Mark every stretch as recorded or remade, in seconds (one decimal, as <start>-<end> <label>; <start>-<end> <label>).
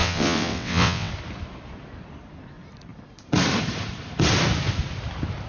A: 0.0-1.1 remade; 1.1-5.5 recorded